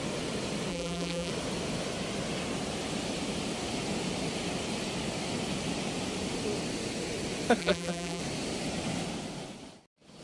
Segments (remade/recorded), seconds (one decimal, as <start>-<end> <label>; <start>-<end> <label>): 0.0-0.7 recorded; 0.7-1.3 remade; 1.3-7.6 recorded; 7.6-8.2 remade; 8.2-10.2 recorded